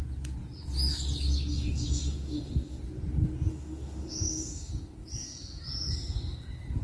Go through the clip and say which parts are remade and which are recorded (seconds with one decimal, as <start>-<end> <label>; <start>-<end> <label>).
0.0-1.5 recorded; 1.5-2.8 remade; 2.8-3.5 recorded; 3.5-4.7 remade; 4.7-6.8 recorded